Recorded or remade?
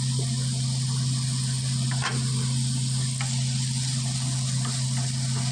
recorded